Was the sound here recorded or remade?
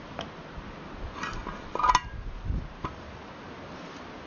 recorded